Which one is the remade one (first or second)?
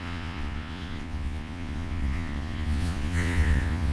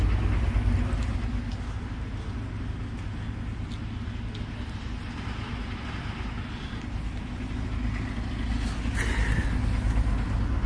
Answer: first